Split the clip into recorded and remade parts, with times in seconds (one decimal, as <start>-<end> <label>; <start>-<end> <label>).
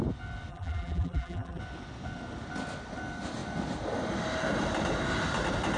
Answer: 0.0-0.5 recorded; 0.5-1.6 remade; 1.6-5.8 recorded